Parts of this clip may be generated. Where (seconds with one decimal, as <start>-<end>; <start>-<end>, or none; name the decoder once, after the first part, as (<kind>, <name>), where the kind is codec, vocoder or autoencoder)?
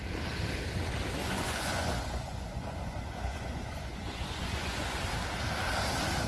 1.2-5.0 (vocoder, Vocos)